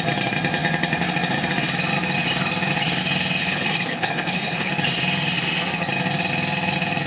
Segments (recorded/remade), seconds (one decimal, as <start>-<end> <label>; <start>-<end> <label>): 0.0-3.4 recorded; 3.4-4.7 remade; 4.7-7.1 recorded